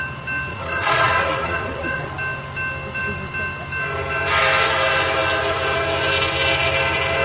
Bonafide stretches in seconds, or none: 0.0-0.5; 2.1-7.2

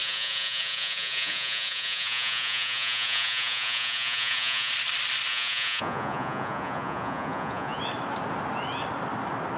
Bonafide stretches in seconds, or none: 4.7-5.3; 7.8-9.6